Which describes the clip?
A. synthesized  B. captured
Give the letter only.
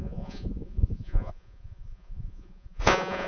A